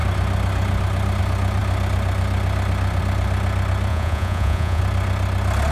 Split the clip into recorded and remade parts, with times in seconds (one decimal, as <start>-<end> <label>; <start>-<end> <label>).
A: 0.0-3.9 recorded; 3.9-4.8 remade; 4.8-5.7 recorded

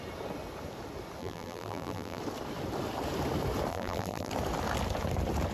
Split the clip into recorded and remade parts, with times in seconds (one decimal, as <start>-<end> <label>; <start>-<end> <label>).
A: 0.0-1.2 recorded; 1.2-2.2 remade; 2.2-3.7 recorded; 3.7-4.3 remade; 4.3-5.5 recorded

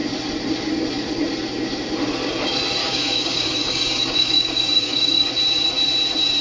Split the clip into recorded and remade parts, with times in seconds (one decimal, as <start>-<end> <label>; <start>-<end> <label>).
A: 0.0-2.8 recorded; 2.8-5.3 remade; 5.3-6.4 recorded

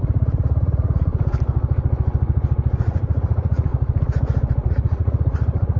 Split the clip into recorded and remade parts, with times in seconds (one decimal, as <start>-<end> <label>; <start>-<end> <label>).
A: 0.0-1.1 remade; 1.1-2.8 recorded; 2.8-3.7 remade; 3.7-4.7 recorded; 4.7-5.8 remade

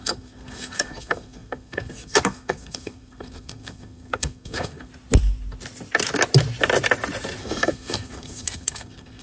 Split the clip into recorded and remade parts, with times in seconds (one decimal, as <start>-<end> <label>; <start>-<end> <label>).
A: 0.0-4.9 remade; 4.9-7.4 recorded; 7.4-9.2 remade

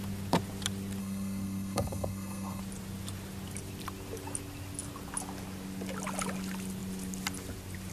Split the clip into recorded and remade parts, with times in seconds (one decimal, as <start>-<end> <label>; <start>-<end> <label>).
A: 0.0-1.0 recorded; 1.0-2.6 remade; 2.6-7.9 recorded

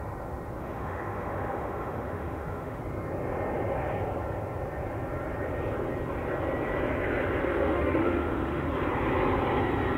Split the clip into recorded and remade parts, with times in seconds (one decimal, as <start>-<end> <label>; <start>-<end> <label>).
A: 0.0-0.6 recorded; 0.6-2.8 remade; 2.8-7.4 recorded; 7.4-8.7 remade; 8.7-10.0 recorded

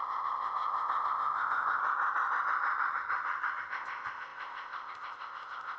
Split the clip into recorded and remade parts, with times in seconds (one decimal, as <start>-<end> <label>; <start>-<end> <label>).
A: 0.0-1.8 remade; 1.8-3.7 recorded; 3.7-5.8 remade